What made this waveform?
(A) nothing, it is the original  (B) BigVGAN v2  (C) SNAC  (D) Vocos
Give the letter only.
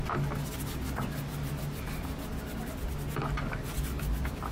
A